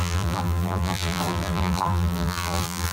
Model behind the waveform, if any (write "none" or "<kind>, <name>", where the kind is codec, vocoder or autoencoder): vocoder, BigVGAN v2